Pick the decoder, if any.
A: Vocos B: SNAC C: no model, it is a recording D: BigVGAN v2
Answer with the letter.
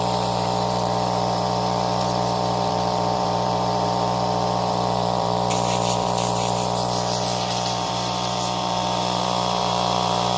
D